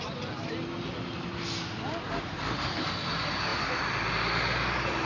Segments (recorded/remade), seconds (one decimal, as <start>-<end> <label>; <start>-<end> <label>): 0.0-5.1 recorded

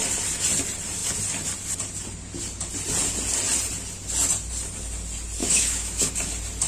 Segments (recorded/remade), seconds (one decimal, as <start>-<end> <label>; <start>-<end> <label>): 0.0-5.4 recorded; 5.4-6.1 remade; 6.1-6.7 recorded